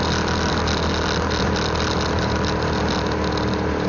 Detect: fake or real real